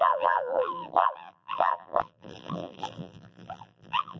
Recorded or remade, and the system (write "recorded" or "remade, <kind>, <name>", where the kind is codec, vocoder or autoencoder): remade, vocoder, BigVGAN v2